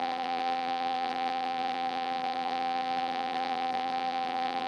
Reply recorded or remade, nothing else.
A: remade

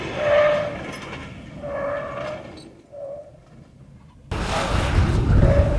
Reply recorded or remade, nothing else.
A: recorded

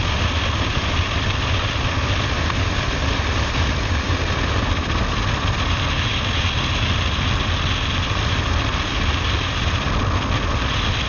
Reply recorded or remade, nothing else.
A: recorded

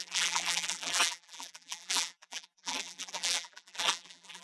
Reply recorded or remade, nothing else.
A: remade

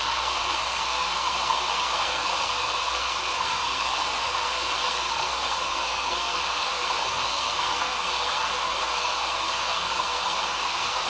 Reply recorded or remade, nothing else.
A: remade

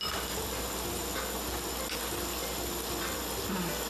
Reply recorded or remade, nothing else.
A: recorded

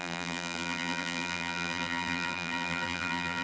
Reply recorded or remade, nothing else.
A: remade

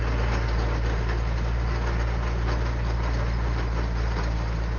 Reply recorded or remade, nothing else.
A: recorded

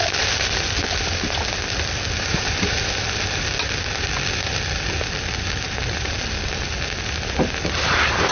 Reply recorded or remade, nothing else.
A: recorded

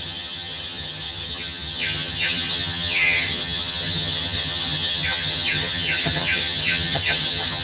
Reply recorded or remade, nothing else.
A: remade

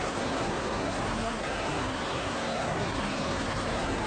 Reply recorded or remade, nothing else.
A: remade